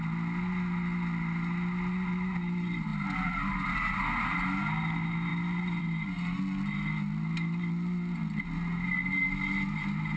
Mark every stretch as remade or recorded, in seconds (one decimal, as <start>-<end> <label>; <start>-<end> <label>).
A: 0.0-10.2 recorded